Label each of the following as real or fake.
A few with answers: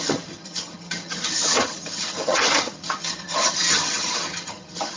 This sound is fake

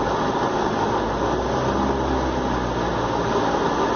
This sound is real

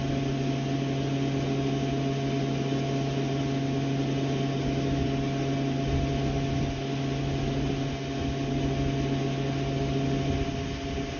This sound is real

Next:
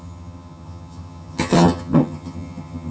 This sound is fake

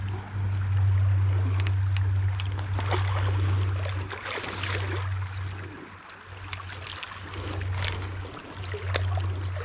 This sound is real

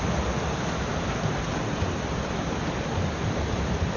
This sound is real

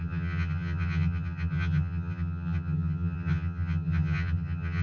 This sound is fake